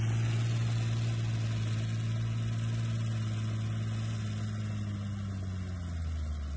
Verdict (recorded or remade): recorded